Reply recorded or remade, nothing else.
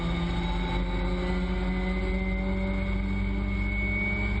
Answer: recorded